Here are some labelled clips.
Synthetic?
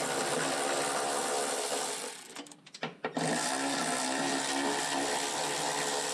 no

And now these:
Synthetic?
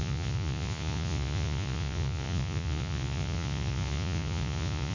yes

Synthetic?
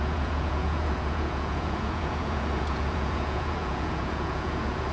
yes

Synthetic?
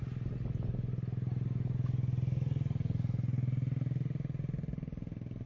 no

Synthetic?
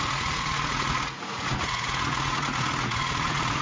yes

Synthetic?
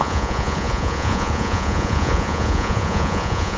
yes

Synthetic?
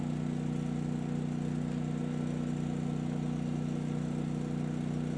no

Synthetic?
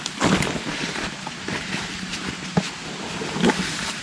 no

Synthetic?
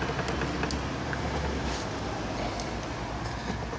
no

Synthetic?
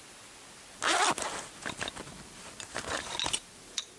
no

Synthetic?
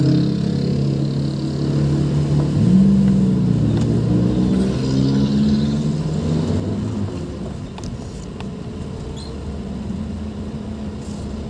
no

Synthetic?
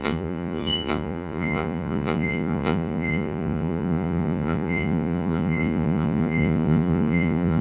yes